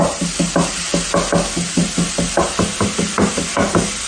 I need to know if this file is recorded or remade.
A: recorded